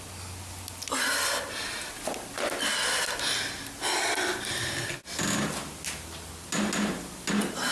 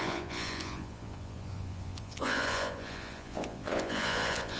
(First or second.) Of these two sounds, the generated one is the second